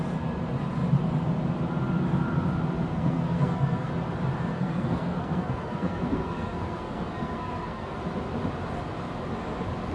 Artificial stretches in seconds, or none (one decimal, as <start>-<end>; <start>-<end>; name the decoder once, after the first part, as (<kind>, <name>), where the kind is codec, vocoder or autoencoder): 2.9-3.9 (codec, SNAC); 4.5-8.0